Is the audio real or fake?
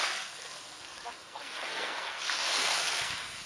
fake